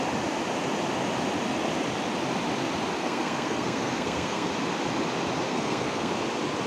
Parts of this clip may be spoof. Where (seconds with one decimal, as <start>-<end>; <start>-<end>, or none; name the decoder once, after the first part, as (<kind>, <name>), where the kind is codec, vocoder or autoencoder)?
3.0-4.5 (codec, SNAC); 5.5-6.1